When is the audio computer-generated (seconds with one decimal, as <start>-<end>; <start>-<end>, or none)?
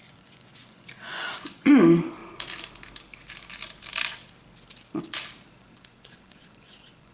0.0-2.2; 5.6-7.1